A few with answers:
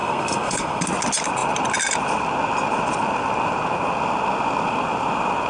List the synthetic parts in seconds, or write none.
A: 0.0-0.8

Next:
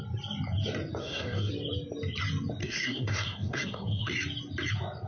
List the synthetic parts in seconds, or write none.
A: 1.0-1.5; 2.6-4.1

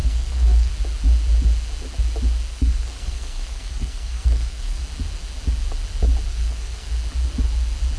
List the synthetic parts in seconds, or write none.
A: 0.0-0.7; 2.5-4.8; 6.3-6.9